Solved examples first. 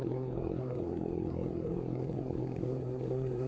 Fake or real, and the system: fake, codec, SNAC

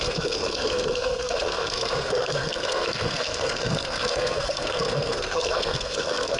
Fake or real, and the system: fake, codec, SNAC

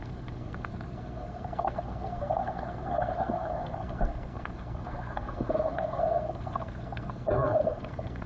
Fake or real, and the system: fake, codec, SNAC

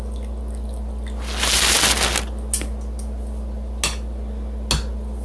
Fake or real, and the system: real